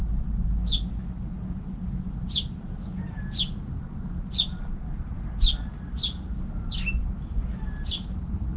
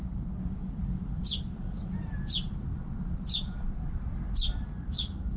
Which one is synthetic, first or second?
second